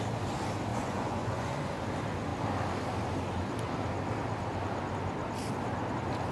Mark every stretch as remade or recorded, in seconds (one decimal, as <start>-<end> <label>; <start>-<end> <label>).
0.0-0.7 recorded; 0.7-1.7 remade; 1.7-6.3 recorded